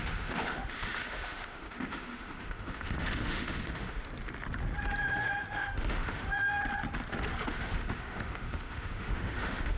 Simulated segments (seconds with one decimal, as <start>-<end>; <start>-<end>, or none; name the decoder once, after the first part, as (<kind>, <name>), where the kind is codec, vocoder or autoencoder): 0.0-4.1 (autoencoder, DAC-VAE); 5.0-6.6; 7.5-9.8